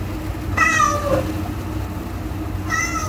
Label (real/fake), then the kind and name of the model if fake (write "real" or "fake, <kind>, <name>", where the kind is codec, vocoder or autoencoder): real